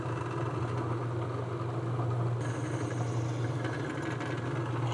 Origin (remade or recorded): recorded